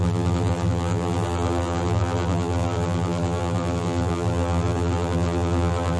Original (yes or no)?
no